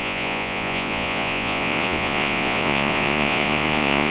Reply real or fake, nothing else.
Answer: fake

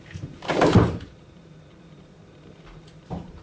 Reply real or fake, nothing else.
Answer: fake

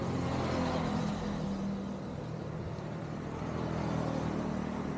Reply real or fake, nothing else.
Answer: real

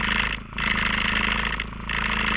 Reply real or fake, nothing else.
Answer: real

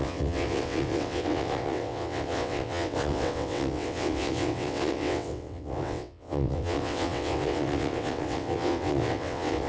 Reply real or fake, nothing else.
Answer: fake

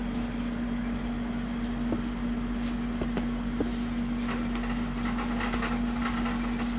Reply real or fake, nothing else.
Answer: real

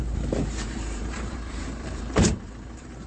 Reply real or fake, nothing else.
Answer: fake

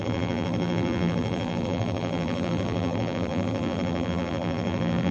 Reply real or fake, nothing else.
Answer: fake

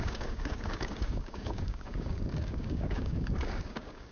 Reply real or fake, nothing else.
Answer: fake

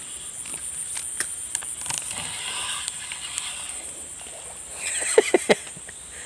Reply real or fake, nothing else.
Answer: real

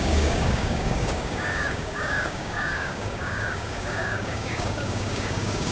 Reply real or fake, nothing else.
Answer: fake